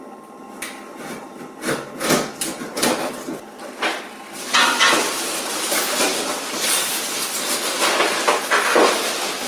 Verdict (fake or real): real